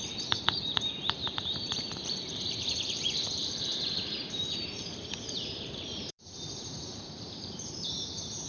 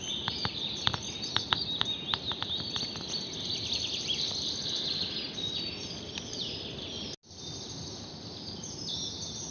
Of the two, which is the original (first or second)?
second